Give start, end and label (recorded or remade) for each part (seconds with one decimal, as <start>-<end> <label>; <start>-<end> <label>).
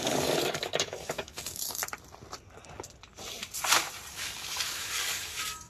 0.0-1.8 remade; 1.8-4.1 recorded; 4.1-5.7 remade